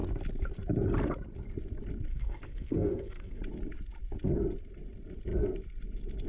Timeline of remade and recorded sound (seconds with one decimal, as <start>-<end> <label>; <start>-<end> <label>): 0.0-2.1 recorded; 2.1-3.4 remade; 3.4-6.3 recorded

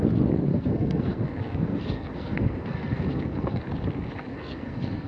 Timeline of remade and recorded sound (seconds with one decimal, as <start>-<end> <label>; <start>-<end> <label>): 0.0-0.5 recorded; 0.5-3.6 remade; 3.6-4.3 recorded; 4.3-5.1 remade

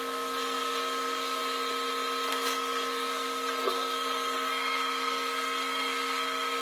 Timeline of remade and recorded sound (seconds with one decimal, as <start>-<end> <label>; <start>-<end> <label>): 0.0-1.4 remade; 1.4-2.3 recorded; 2.3-6.6 remade

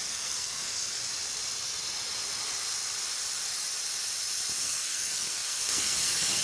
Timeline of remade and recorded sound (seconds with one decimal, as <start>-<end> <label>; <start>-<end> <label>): 0.0-1.0 remade; 1.0-4.6 recorded; 4.6-6.4 remade